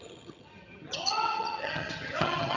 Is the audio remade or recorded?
remade